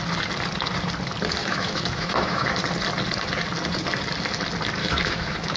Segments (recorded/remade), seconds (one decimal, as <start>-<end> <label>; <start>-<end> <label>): 0.0-1.4 recorded; 1.4-2.6 remade; 2.6-4.8 recorded; 4.8-5.6 remade